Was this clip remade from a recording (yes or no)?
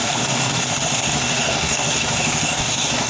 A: yes